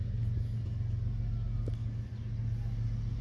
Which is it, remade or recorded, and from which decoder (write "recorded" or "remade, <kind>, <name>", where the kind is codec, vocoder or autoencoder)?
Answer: recorded